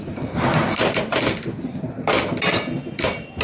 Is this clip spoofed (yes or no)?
no